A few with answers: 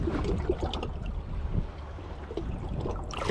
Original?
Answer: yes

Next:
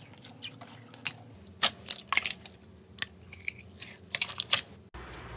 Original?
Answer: yes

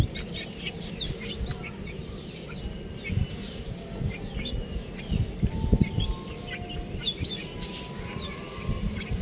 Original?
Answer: yes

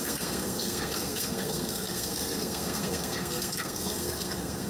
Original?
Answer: no